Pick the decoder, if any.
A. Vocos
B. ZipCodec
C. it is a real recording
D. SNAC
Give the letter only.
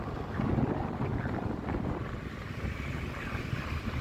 C